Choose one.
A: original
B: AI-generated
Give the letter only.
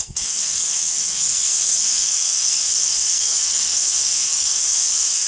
B